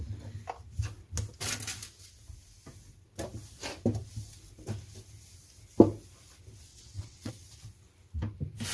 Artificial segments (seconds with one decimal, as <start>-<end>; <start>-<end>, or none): 6.7-7.3